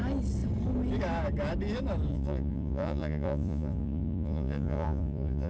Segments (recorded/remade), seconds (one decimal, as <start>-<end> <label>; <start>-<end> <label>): 0.0-2.1 recorded; 2.1-5.5 remade